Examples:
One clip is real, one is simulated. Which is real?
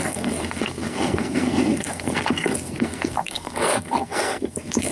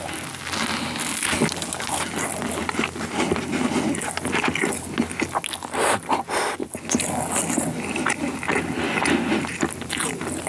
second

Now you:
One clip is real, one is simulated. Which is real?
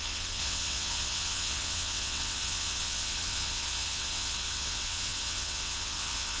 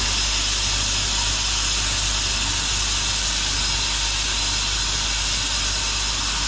second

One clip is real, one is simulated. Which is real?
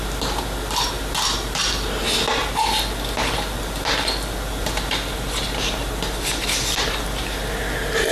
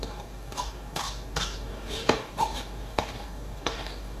first